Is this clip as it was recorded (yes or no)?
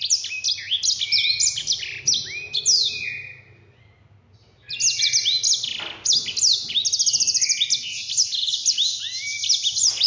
yes